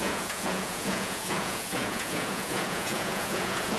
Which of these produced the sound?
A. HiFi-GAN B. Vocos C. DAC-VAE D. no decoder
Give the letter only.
B